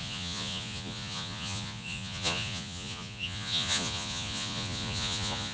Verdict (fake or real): fake